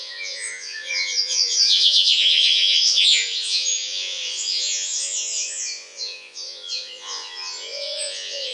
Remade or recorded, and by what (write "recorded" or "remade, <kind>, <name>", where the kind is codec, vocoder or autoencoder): remade, vocoder, Vocos